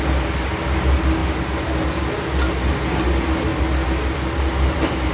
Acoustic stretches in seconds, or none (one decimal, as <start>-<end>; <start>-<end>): 0.0-5.1